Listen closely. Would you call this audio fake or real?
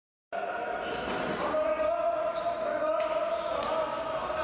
real